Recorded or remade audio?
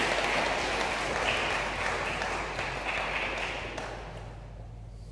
recorded